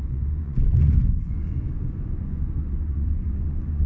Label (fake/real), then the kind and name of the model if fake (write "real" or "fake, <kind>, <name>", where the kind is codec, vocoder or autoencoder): fake, vocoder, Vocos